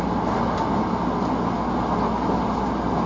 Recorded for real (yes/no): yes